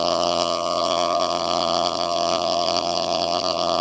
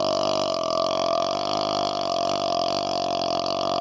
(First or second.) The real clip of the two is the second